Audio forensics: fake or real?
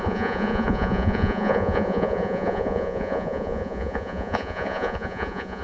fake